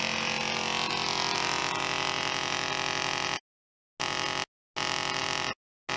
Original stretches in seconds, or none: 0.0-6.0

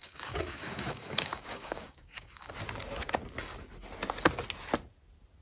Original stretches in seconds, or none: 2.5-5.4

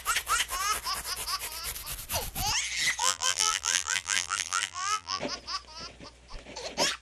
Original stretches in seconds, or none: 0.0-3.0; 5.2-7.0

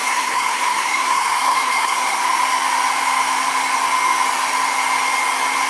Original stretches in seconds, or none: 2.2-5.7

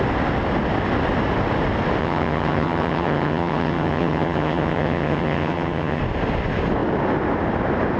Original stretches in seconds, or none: 0.0-2.0; 6.0-8.0

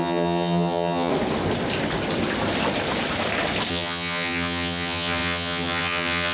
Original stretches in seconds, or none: 1.1-3.7

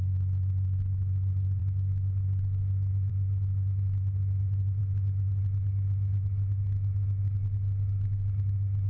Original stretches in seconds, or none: 0.0-8.9